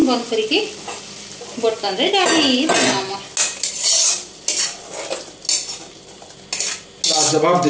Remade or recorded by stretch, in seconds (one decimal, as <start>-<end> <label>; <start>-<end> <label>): 0.0-7.7 recorded

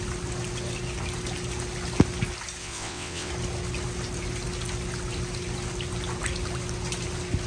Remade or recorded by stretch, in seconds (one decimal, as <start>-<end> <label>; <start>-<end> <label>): 0.0-2.6 recorded; 2.6-3.3 remade; 3.3-7.5 recorded

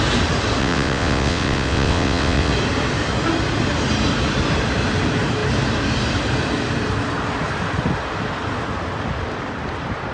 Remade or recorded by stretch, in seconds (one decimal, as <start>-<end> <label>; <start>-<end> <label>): 0.0-0.6 recorded; 0.6-2.5 remade; 2.5-10.1 recorded

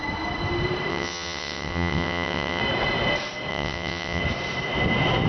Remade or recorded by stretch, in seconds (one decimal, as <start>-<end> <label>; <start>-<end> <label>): 0.0-0.9 recorded; 0.9-2.6 remade; 2.6-3.5 recorded; 3.5-4.2 remade; 4.2-5.3 recorded

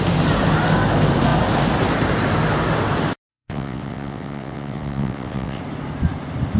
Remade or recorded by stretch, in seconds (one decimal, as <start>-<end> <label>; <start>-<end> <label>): 0.0-3.3 recorded; 3.3-5.6 remade; 5.6-6.6 recorded

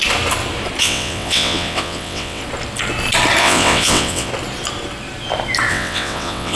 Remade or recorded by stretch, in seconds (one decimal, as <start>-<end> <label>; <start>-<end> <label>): 0.0-0.8 recorded; 0.8-2.4 remade; 2.4-3.4 recorded; 3.4-4.3 remade; 4.3-5.7 recorded; 5.7-6.6 remade